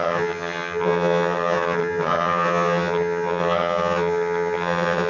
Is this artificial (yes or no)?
yes